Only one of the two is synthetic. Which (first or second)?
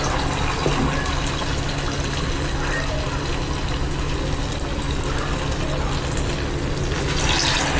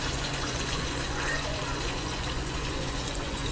second